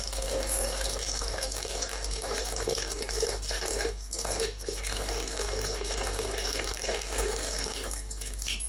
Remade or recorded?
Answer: remade